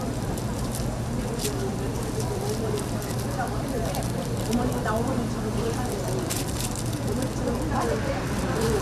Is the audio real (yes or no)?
no